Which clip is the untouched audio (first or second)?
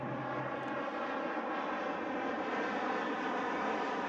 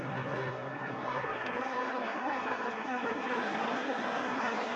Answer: first